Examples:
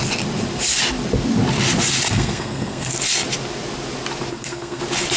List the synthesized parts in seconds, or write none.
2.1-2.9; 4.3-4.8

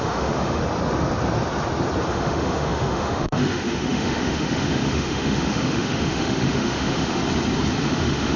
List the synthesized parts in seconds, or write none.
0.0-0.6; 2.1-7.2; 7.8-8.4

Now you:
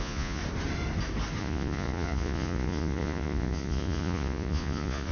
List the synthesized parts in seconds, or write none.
0.0-0.4; 1.4-5.1

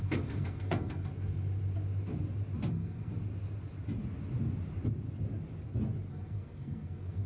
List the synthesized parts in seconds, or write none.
0.0-1.1; 2.7-3.1; 6.1-7.3